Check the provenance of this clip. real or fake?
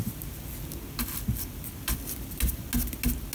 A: real